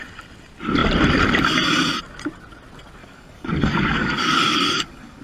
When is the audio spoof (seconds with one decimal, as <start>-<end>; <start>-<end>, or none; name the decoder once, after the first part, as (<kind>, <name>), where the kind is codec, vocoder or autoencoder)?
3.0-5.2 (codec, DAC)